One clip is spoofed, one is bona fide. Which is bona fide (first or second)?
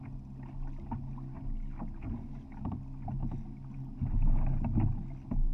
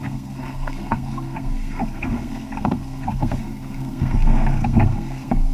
first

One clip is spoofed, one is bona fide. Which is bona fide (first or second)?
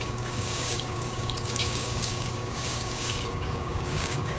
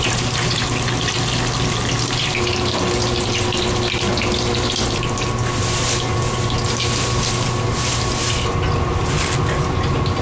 second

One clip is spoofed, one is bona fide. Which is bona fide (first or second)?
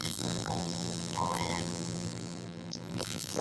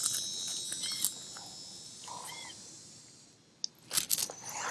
second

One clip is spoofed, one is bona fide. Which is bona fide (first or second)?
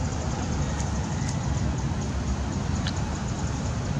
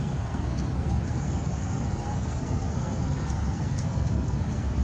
first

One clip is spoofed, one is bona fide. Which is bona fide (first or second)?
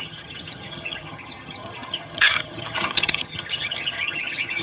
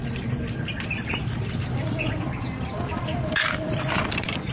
second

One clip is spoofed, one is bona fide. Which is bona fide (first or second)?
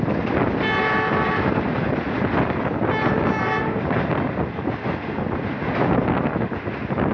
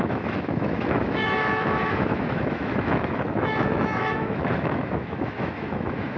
first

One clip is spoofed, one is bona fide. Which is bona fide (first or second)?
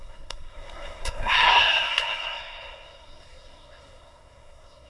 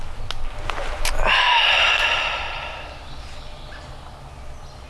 second